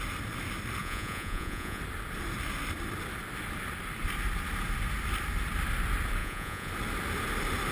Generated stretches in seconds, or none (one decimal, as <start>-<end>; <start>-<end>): 0.8-1.8; 6.2-6.7